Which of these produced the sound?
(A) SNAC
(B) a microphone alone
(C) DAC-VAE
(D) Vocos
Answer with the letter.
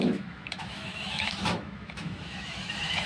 C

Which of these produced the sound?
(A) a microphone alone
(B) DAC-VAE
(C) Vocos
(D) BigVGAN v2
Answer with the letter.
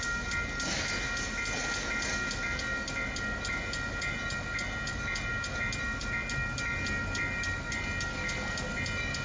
A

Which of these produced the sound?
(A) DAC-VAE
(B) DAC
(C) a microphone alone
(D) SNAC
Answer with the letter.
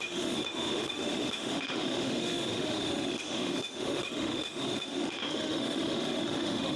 A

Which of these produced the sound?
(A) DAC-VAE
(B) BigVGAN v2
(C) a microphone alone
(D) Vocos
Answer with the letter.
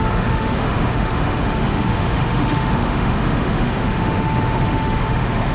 A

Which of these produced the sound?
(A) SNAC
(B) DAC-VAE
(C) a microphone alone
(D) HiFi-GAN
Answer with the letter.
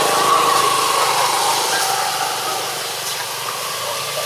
C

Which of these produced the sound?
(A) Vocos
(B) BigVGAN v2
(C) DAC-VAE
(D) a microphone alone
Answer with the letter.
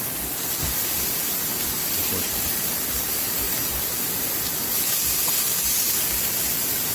D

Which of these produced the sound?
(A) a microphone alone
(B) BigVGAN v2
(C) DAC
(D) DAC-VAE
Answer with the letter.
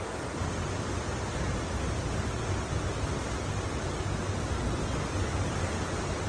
A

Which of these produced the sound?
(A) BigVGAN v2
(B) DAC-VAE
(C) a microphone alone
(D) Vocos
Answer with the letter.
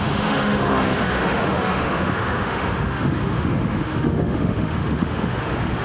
B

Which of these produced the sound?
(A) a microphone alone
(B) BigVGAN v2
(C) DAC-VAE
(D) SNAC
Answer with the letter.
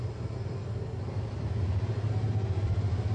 A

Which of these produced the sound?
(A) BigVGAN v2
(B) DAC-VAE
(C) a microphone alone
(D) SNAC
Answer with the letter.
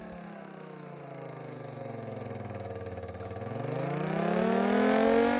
B